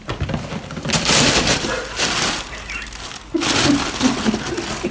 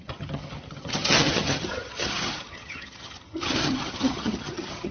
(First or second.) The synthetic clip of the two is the second